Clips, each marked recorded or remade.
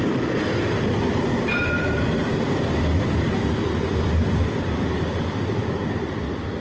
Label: recorded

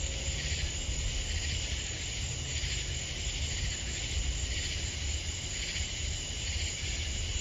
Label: recorded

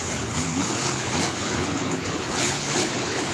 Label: remade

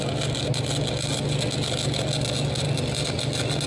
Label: recorded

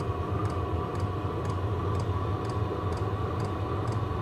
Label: recorded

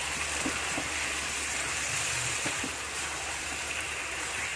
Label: remade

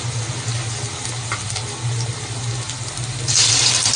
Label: recorded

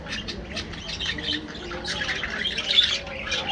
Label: recorded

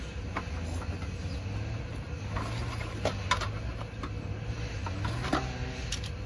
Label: recorded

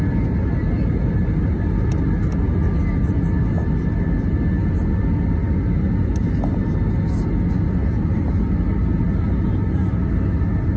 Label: recorded